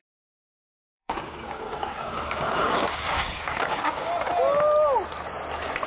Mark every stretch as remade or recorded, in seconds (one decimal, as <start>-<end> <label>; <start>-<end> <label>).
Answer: 0.0-0.6 recorded; 0.6-4.1 remade; 4.1-5.9 recorded